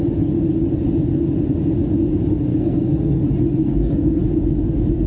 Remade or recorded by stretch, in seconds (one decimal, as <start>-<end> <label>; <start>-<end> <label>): 0.0-2.5 recorded; 2.5-3.2 remade; 3.2-3.6 recorded; 3.6-4.2 remade; 4.2-5.1 recorded